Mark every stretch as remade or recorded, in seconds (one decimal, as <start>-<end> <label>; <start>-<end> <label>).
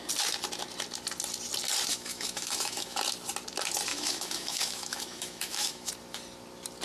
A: 0.0-1.9 recorded; 1.9-3.0 remade; 3.0-3.9 recorded; 3.9-5.9 remade; 5.9-6.8 recorded